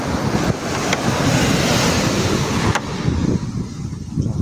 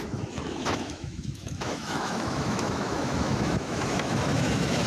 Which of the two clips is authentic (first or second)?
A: first